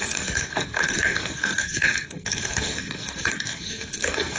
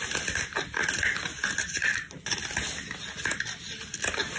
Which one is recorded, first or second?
second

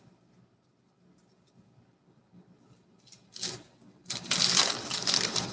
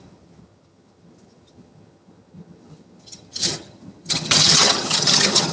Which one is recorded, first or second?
first